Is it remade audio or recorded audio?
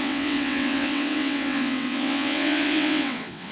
remade